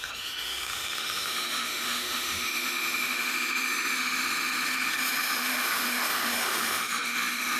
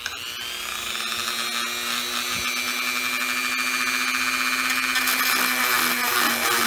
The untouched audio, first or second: second